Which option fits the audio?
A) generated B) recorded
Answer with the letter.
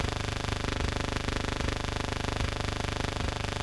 A